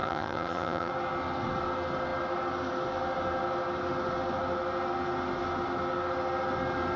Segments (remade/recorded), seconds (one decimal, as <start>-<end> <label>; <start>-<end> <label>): 0.0-0.9 remade; 0.9-7.0 recorded